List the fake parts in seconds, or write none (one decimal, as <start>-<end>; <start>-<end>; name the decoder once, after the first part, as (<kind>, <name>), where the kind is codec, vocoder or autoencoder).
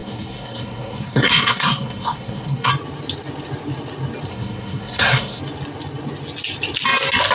0.0-2.7 (codec, SNAC); 4.3-5.4